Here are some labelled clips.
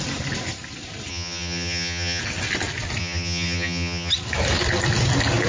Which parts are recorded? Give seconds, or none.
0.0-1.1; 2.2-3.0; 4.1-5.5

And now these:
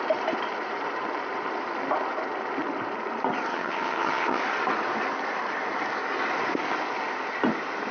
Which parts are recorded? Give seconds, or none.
0.0-3.5; 4.4-7.9

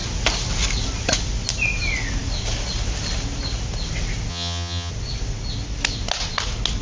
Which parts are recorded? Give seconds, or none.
0.0-4.3; 4.9-6.8

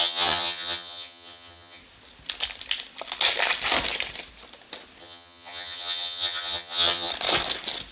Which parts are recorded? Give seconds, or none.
1.8-5.0; 7.1-7.9

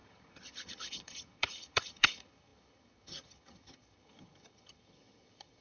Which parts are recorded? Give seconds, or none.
none

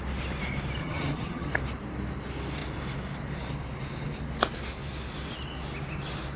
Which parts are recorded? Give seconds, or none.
0.0-0.8; 1.5-6.4

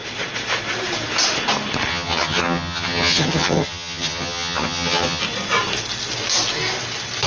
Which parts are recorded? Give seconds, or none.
0.0-1.9; 5.2-7.3